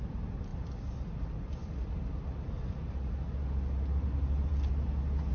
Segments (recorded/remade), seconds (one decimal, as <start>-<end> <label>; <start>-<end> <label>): 0.0-5.3 recorded